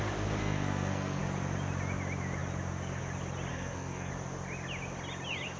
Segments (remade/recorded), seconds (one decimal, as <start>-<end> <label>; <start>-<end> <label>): 0.0-0.4 recorded; 0.4-1.2 remade; 1.2-3.5 recorded; 3.5-4.1 remade; 4.1-5.6 recorded